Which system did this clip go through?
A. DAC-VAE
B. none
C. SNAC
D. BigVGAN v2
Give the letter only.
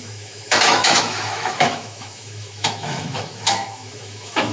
A